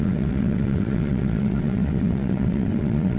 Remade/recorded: remade